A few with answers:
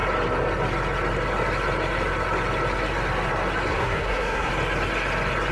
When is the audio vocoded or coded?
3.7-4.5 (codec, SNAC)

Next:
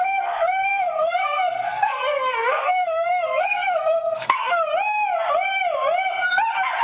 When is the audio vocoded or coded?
0.0-4.7 (codec, SNAC)